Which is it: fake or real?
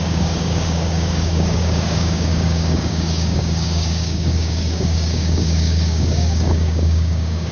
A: fake